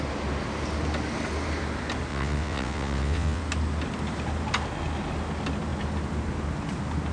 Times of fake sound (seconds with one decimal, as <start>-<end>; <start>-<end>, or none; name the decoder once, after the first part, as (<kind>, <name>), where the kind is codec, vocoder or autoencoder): 2.1-3.4 (vocoder, WaveNeXt)